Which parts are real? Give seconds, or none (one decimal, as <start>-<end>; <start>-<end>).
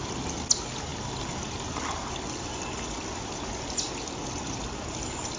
0.0-5.4